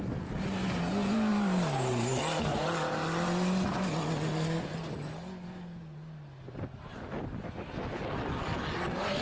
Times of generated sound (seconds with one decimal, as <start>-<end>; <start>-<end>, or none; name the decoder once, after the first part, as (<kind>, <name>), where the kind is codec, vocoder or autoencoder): 1.3-3.7 (vocoder, BigVGAN v2)